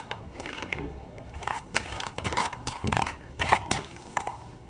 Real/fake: fake